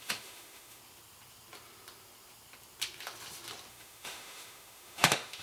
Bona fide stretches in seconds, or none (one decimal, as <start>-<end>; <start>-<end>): 0.8-3.7